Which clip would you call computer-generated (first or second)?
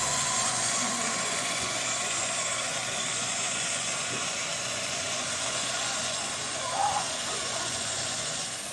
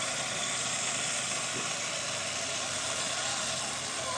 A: first